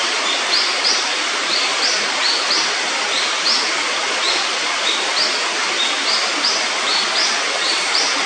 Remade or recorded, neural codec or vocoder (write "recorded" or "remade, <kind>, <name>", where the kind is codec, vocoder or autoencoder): remade, vocoder, BigVGAN v2